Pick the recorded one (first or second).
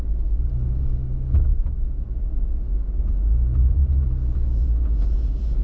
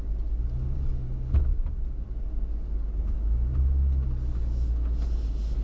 second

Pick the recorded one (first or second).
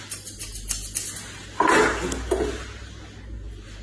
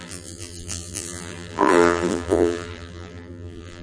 first